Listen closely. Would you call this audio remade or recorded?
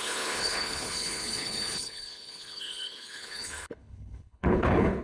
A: remade